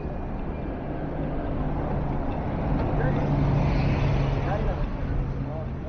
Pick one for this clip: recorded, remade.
recorded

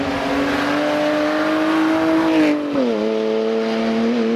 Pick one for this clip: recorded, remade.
recorded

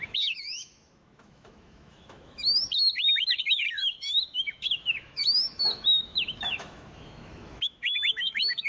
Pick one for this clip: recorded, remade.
remade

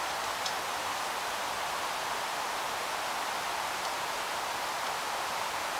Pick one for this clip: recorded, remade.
recorded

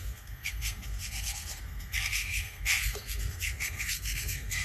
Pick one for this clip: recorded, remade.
remade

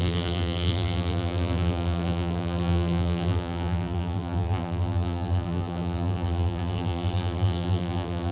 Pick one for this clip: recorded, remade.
remade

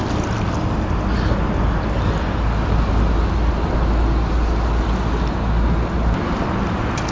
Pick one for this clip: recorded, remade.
recorded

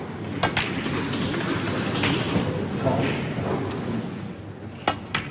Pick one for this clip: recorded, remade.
recorded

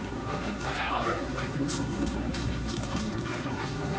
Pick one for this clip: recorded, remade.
remade